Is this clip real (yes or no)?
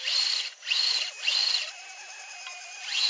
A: no